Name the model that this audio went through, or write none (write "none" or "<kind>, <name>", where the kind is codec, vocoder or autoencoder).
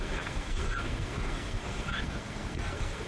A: codec, SNAC